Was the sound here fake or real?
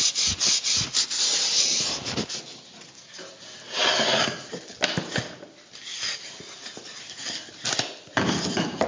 real